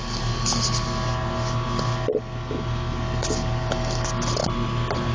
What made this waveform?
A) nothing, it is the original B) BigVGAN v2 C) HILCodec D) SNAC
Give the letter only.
A